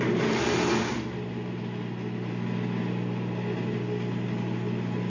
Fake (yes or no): no